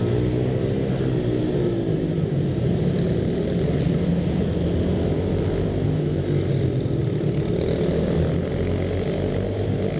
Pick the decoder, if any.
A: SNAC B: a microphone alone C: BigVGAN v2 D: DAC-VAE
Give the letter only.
B